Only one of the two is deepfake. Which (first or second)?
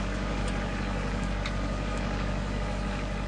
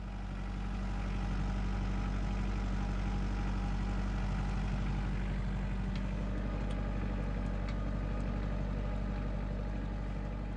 first